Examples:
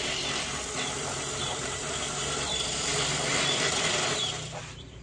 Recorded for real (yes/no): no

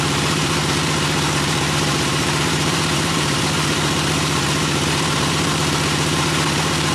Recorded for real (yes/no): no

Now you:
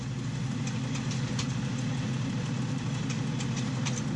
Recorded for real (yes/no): yes